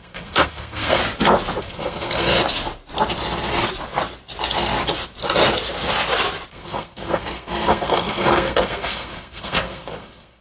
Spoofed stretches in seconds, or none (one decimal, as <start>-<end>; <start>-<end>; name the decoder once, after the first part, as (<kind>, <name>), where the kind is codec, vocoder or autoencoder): 0.0-1.0 (codec, SNAC); 1.6-2.3; 6.5-10.4